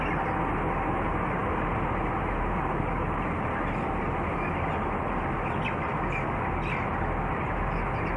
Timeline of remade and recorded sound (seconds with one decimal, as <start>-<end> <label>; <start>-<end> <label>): 0.0-8.2 recorded